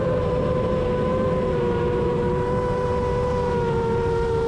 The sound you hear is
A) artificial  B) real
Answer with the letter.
A